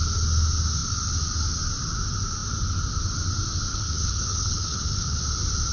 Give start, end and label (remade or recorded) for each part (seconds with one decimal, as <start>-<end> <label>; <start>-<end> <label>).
0.0-3.7 recorded; 3.7-5.2 remade; 5.2-5.7 recorded